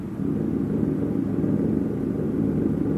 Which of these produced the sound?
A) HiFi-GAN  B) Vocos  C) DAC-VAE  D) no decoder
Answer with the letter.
D